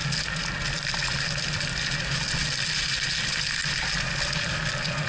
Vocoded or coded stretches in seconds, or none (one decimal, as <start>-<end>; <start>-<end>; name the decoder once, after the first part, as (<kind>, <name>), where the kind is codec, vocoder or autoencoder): none